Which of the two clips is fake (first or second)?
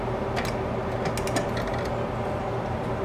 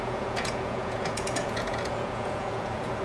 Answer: second